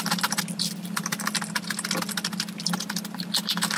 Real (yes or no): yes